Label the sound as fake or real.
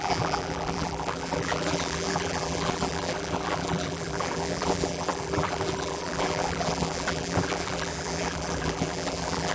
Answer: fake